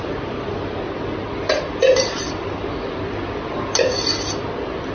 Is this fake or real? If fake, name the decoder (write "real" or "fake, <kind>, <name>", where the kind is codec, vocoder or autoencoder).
real